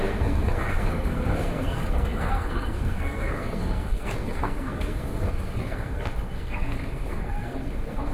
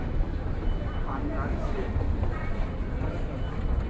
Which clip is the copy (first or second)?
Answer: first